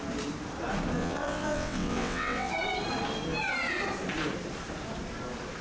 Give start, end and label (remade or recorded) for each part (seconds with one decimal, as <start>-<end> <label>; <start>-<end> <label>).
0.0-1.0 recorded; 1.0-2.5 remade; 2.5-5.6 recorded